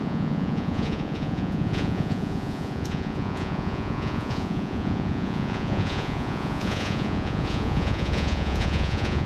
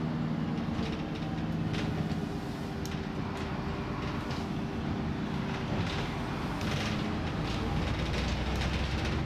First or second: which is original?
second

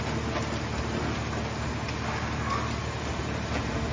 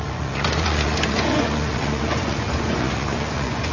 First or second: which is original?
first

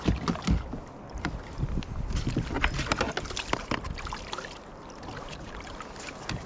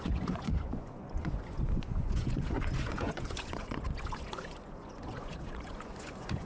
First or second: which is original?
first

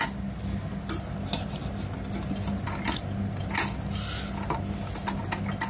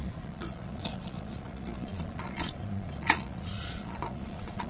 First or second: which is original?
first